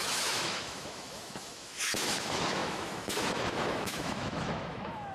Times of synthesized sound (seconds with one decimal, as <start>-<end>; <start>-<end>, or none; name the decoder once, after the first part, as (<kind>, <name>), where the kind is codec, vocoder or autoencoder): 0.0-5.1 (autoencoder, DAC-VAE)